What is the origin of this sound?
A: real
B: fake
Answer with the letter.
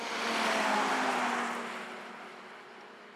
A